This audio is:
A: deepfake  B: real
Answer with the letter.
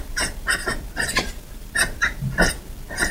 A